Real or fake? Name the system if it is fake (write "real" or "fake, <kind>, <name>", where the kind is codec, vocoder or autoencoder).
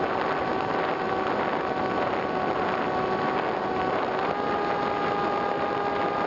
real